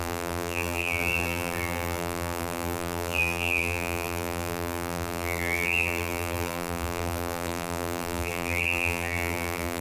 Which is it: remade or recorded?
remade